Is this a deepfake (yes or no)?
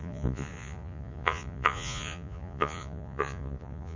yes